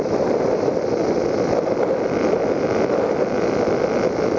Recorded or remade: remade